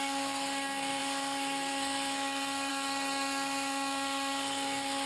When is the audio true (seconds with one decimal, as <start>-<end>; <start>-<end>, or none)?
none